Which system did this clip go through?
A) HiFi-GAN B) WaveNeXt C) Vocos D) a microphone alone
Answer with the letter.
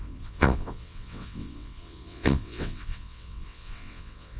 B